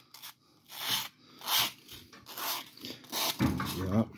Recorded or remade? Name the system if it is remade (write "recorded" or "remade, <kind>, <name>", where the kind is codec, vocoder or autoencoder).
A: recorded